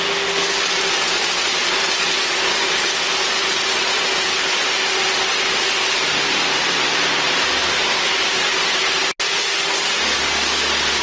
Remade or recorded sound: recorded